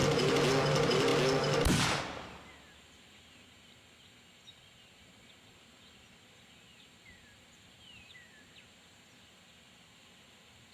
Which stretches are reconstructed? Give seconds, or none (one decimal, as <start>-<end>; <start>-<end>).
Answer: none